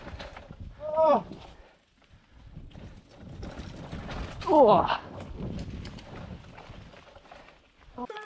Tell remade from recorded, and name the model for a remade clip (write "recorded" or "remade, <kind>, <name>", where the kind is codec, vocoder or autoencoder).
recorded